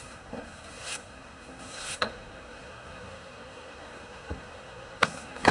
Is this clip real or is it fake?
fake